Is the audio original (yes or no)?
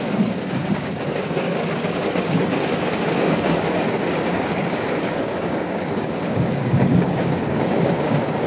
no